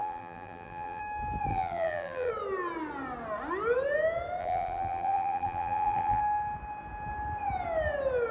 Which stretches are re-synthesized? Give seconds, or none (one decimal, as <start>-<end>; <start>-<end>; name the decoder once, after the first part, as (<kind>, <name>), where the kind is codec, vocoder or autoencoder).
0.0-1.0 (vocoder, BigVGAN v2); 1.5-2.3; 4.4-6.2